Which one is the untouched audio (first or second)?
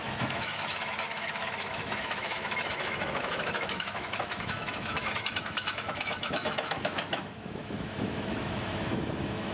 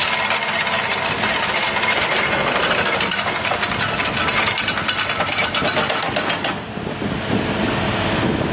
second